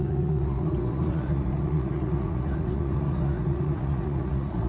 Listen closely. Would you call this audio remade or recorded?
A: remade